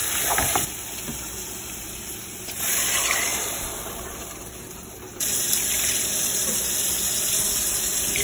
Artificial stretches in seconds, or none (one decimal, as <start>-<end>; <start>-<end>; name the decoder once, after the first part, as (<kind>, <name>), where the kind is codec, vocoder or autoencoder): 1.0-8.2 (vocoder, BigVGAN v2)